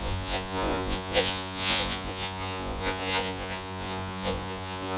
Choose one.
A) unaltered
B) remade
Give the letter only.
B